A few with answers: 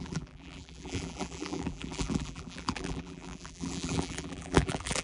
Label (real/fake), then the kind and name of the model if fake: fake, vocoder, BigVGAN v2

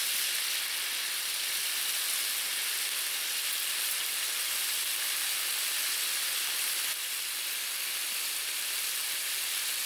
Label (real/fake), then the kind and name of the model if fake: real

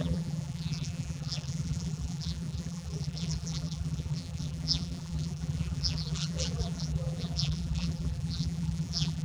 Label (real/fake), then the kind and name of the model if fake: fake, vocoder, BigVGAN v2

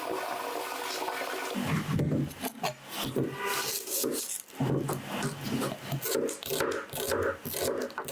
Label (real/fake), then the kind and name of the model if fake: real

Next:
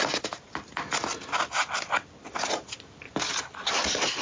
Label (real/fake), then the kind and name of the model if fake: real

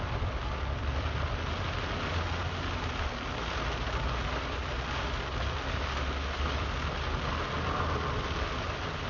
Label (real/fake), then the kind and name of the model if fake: real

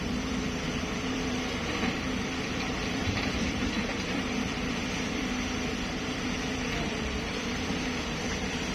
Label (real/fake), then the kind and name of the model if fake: fake, vocoder, BigVGAN v2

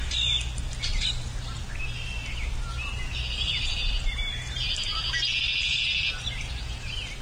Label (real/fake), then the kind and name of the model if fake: real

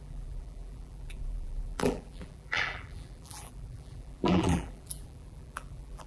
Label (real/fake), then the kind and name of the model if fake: fake, vocoder, BigVGAN v2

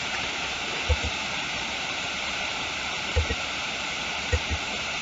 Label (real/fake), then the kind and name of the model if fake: fake, vocoder, BigVGAN v2